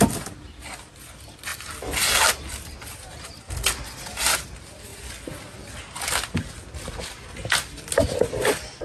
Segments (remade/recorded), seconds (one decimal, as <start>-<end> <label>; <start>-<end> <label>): 0.0-8.8 recorded